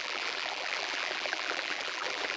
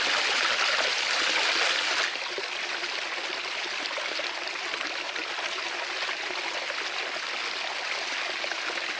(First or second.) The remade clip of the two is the first